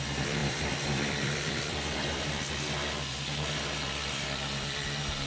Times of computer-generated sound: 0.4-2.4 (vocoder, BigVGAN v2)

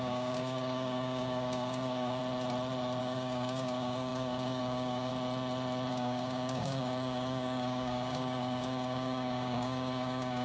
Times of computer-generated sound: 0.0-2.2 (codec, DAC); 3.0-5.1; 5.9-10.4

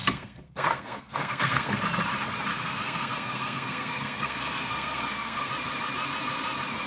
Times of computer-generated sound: 0.0-1.8 (codec, SNAC); 2.5-5.5